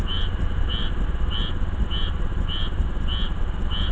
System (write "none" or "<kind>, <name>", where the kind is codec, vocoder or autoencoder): none